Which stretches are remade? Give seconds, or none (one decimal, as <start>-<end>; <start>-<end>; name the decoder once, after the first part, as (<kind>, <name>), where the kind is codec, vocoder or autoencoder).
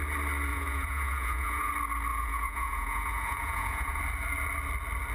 0.5-1.7 (vocoder, Vocos); 2.1-4.0